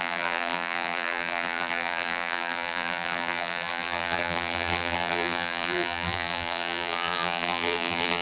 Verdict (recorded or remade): remade